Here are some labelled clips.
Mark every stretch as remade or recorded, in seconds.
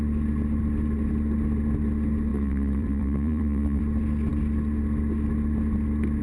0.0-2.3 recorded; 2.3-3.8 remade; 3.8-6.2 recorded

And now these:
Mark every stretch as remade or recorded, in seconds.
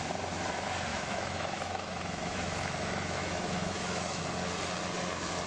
0.0-0.9 recorded; 0.9-4.2 remade; 4.2-5.5 recorded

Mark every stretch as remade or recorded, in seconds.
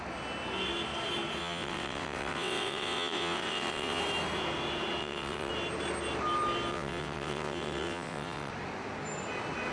0.0-1.4 recorded; 1.4-4.0 remade; 4.0-5.0 recorded; 5.0-5.5 remade; 5.5-6.7 recorded; 6.7-8.5 remade; 8.5-9.7 recorded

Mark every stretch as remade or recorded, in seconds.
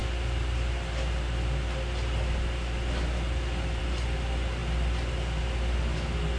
0.0-6.4 recorded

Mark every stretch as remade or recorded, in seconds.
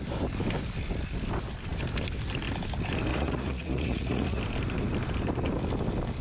0.0-3.1 recorded; 3.1-4.4 remade; 4.4-6.2 recorded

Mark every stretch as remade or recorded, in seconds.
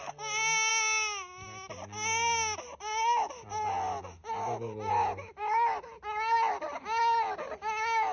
0.0-8.1 recorded